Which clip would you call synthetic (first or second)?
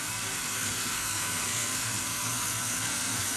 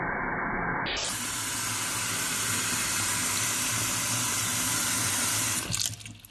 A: first